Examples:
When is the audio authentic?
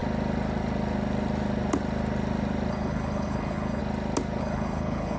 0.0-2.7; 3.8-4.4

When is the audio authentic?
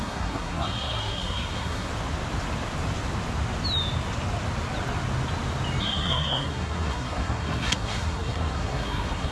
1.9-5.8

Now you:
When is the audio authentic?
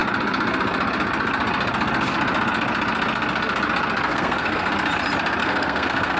0.0-4.1; 4.7-5.4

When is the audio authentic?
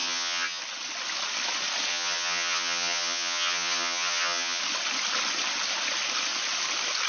0.6-1.9; 4.6-7.1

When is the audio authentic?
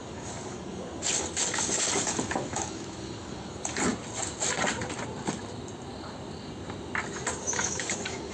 3.9-7.5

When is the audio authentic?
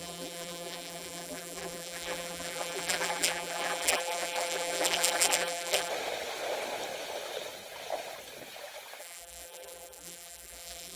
5.9-9.0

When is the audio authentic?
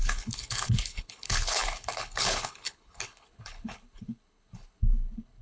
none